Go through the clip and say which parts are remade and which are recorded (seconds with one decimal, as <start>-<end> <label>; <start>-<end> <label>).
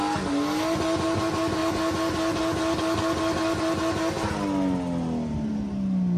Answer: 0.0-6.2 recorded